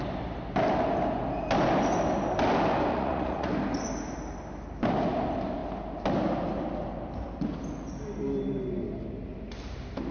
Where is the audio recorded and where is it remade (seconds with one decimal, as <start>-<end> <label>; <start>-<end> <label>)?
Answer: 0.0-2.9 recorded; 2.9-3.5 remade; 3.5-10.1 recorded